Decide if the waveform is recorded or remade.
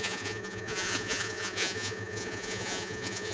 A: remade